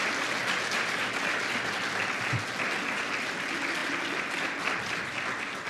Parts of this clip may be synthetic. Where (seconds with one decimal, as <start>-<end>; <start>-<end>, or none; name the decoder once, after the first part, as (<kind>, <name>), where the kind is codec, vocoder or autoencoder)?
0.4-1.5 (vocoder, BigVGAN v2); 3.8-4.6